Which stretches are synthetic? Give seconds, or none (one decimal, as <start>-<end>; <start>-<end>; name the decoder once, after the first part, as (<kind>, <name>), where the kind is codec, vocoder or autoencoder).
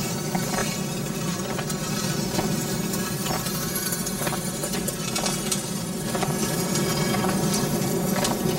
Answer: 0.6-2.1 (vocoder, BigVGAN v2); 3.2-5.0; 6.9-7.7